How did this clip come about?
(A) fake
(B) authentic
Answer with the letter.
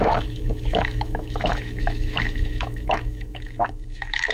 A